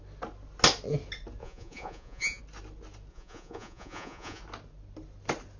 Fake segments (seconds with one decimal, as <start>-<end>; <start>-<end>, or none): 1.4-2.4; 3.1-4.4